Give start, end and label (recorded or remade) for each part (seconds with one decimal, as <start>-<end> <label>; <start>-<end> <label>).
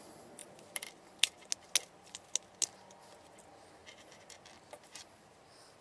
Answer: 0.0-0.4 recorded; 0.4-0.9 remade; 0.9-5.8 recorded